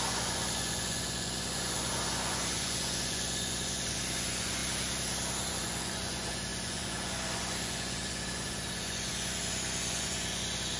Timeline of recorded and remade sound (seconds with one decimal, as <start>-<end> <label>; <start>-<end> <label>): 0.0-4.6 remade; 4.6-5.5 recorded; 5.5-10.8 remade